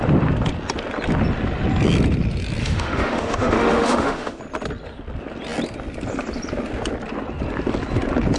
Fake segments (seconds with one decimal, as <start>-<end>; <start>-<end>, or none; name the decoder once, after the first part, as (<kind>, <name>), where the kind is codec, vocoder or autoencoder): 2.6-4.4 (autoencoder, DAC-VAE)